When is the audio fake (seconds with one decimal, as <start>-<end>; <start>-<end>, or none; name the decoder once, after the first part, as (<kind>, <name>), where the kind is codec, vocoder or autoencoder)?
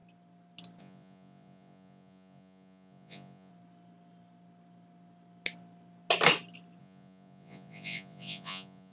0.8-3.5 (vocoder, Vocos); 6.8-8.9